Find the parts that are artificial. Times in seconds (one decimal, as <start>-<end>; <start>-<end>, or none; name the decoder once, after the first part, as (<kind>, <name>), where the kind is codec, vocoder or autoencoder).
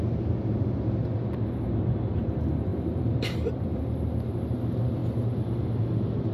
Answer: 2.7-3.8 (vocoder, BigVGAN v2)